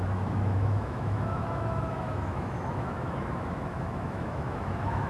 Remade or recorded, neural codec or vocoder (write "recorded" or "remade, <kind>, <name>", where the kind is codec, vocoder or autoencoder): remade, autoencoder, DAC-VAE